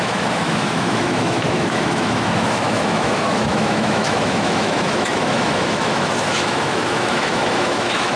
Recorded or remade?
remade